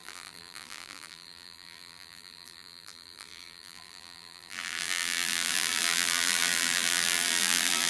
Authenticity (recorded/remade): remade